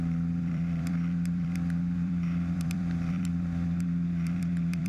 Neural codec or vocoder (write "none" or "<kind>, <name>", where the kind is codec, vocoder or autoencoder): vocoder, BigVGAN v2